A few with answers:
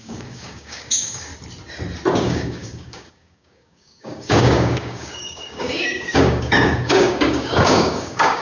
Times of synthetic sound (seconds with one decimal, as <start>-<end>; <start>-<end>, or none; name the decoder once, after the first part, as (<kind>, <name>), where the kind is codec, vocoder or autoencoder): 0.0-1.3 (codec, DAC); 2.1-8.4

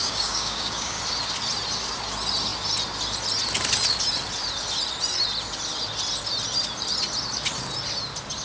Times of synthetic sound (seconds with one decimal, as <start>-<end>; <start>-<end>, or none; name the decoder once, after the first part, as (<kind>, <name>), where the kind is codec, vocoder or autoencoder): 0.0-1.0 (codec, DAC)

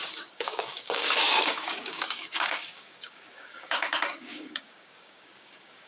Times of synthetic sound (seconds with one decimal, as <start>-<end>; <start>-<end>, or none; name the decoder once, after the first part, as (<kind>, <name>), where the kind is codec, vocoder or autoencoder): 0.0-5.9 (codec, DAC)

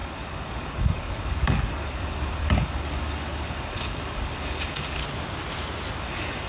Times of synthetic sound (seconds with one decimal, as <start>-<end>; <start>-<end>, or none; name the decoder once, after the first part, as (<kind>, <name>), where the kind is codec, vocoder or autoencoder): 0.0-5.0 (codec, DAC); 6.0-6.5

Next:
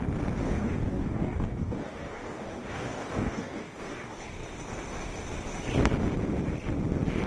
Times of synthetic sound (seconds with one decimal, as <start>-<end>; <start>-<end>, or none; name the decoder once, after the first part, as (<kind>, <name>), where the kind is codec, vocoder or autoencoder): 0.4-4.3 (codec, DAC)

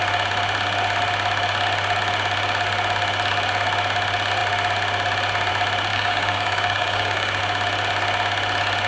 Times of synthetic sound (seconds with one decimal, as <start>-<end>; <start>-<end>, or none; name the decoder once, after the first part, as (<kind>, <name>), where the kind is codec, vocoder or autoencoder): 5.9-7.4 (codec, DAC)